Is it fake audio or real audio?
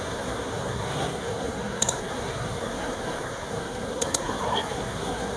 fake